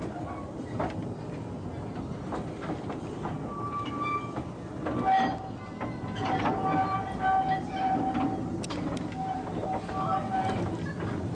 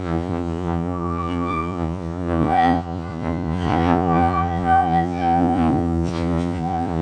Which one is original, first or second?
first